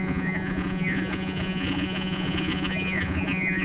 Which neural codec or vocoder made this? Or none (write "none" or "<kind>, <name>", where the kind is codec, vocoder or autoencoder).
vocoder, Vocos